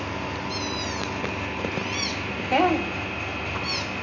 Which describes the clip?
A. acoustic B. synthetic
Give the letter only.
A